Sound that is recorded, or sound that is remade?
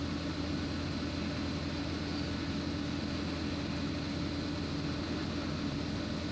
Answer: recorded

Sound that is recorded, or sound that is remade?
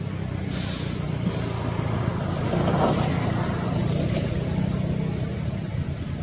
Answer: recorded